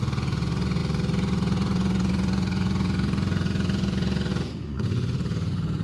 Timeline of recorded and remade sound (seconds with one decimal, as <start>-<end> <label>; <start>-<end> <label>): 0.0-5.8 remade